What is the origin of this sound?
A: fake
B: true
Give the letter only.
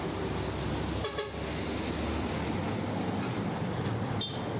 B